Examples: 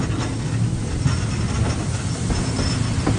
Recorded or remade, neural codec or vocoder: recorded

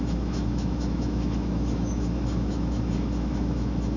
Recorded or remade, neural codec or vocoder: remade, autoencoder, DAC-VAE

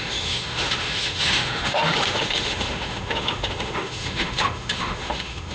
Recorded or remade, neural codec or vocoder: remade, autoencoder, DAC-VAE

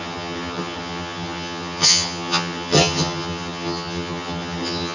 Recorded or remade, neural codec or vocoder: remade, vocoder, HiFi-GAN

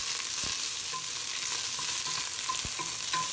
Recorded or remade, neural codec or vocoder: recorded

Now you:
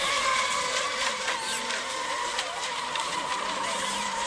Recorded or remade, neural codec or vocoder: remade, vocoder, BigVGAN v2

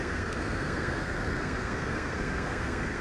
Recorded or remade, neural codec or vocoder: remade, codec, SNAC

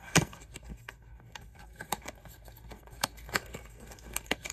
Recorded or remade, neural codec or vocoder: remade, codec, SNAC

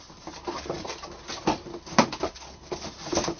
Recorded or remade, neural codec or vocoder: recorded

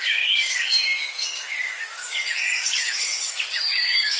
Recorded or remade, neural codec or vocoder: remade, codec, DAC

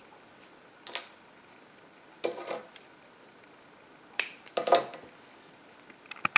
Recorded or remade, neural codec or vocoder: recorded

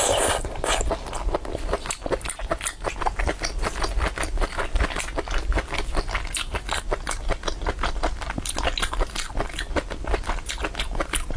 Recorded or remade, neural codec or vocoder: recorded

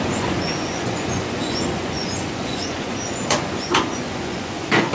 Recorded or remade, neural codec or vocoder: remade, vocoder, Vocos